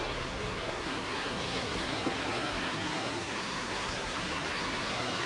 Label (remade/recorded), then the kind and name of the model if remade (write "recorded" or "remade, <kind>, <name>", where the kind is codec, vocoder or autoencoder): remade, codec, SNAC